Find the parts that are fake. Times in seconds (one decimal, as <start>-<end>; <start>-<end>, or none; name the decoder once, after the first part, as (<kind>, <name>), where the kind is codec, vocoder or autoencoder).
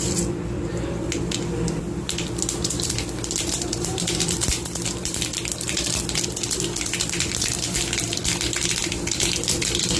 0.0-8.2 (vocoder, BigVGAN v2); 8.8-10.0